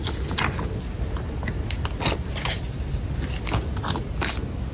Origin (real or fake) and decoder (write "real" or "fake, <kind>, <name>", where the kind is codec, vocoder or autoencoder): real